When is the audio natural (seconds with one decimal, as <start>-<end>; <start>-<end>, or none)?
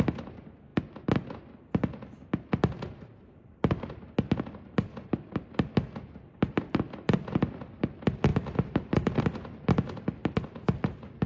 0.7-4.4